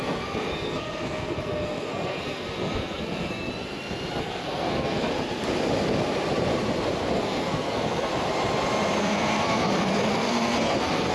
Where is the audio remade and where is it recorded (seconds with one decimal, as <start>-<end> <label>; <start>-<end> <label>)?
0.0-3.5 remade; 3.5-4.2 recorded; 4.2-5.1 remade; 5.1-7.1 recorded; 7.1-8.1 remade; 8.1-9.0 recorded; 9.0-11.1 remade